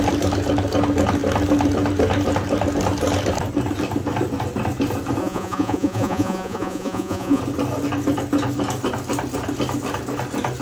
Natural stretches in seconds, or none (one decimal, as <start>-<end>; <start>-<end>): 0.0-5.2; 7.4-10.6